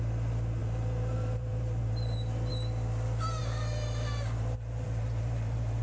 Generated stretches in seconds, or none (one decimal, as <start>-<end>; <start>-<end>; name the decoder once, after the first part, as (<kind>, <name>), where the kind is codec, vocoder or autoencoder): 0.6-2.5 (vocoder, BigVGAN v2); 3.4-5.8